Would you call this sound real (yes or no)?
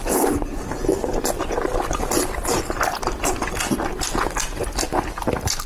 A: yes